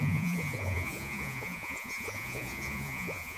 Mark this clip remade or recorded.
remade